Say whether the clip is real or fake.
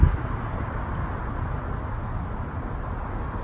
real